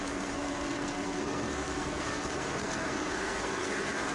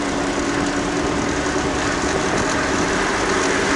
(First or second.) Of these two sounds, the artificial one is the first